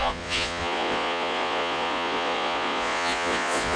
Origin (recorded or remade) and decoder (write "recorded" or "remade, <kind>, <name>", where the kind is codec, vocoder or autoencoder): remade, vocoder, Vocos